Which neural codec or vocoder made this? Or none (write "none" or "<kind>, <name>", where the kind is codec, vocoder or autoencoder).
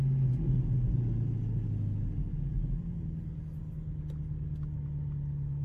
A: none